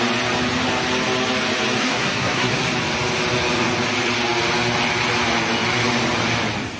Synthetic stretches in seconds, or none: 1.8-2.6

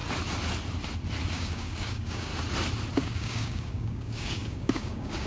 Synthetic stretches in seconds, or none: 1.3-2.3; 2.9-5.3

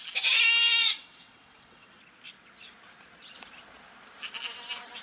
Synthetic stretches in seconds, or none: 0.8-2.0

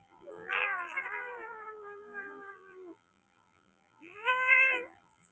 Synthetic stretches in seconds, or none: 0.0-5.3

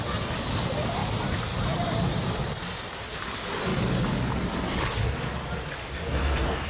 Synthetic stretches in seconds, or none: 5.8-6.7

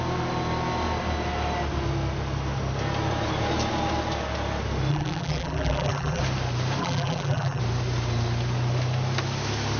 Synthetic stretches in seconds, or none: 4.9-6.2; 6.8-7.6

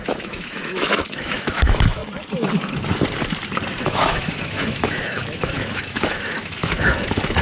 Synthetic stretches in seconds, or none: 0.0-2.0; 3.8-7.4